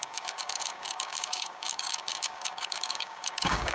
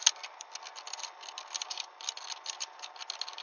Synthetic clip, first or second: first